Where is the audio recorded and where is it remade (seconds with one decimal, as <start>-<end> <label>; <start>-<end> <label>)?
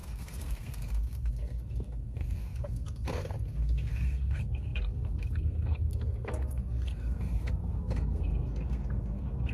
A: 0.0-9.5 remade